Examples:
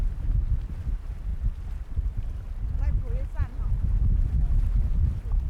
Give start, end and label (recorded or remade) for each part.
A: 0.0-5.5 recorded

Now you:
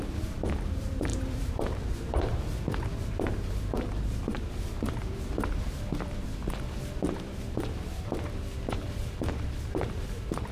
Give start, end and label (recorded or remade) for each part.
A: 0.0-6.4 remade; 6.4-8.7 recorded; 8.7-10.5 remade

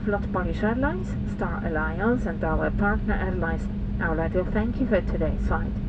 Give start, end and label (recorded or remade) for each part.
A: 0.0-5.9 recorded

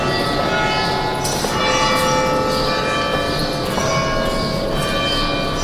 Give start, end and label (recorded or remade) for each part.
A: 0.0-5.6 recorded

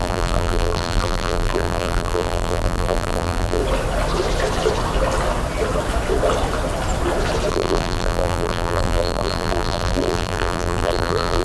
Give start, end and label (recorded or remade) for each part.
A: 0.0-3.6 remade; 3.6-7.5 recorded; 7.5-11.4 remade

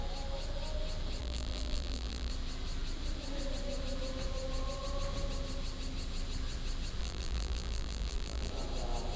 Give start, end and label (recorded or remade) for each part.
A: 0.0-1.2 recorded; 1.2-2.3 remade; 2.3-7.0 recorded; 7.0-8.5 remade; 8.5-9.2 recorded